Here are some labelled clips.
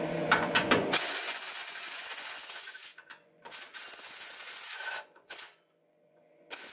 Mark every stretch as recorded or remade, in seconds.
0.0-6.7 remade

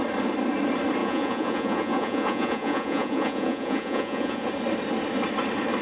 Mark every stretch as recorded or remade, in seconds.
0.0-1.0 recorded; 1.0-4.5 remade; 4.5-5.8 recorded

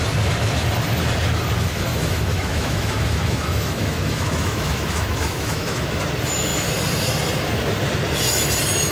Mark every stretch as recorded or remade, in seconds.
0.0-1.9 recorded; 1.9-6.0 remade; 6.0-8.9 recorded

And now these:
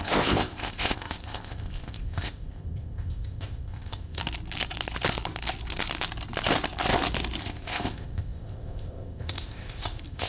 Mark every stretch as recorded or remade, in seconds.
0.0-4.2 remade; 4.2-7.4 recorded; 7.4-10.3 remade

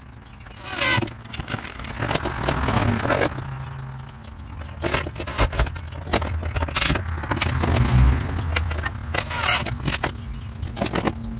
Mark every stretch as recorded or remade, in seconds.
0.0-1.2 recorded; 1.2-1.9 remade; 1.9-11.4 recorded

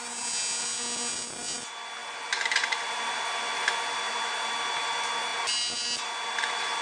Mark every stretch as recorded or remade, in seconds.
0.0-6.8 recorded

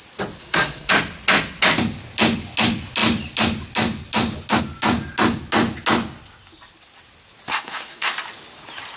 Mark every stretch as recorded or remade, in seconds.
0.0-0.4 recorded; 0.4-0.9 remade; 0.9-7.5 recorded; 7.5-8.1 remade; 8.1-9.0 recorded